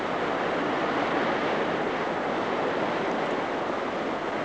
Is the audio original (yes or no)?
yes